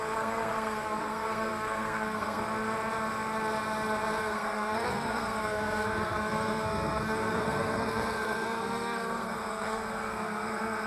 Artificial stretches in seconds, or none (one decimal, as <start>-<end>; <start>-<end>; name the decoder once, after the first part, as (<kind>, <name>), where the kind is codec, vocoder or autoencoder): 0.0-2.4 (codec, SNAC); 4.2-10.9

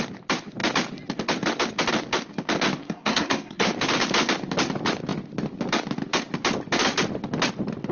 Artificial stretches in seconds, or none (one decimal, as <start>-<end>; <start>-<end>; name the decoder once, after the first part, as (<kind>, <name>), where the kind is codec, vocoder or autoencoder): 2.8-3.7 (codec, SNAC)